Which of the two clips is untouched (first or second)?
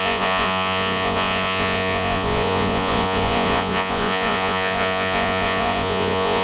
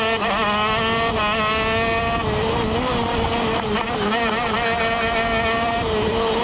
second